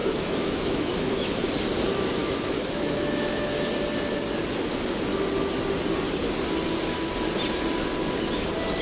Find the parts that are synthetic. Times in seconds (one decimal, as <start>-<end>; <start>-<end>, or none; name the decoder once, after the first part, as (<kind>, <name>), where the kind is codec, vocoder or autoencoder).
0.0-1.5 (autoencoder, DAC-VAE); 2.2-3.7